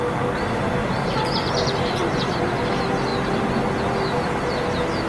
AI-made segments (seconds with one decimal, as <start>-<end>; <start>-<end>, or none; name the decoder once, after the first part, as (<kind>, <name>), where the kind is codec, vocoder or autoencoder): 0.8-2.4 (vocoder, BigVGAN v2)